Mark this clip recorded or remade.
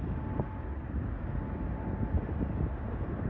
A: recorded